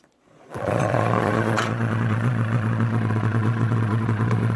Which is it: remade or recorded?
remade